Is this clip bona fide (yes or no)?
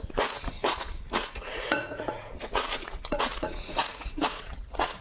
no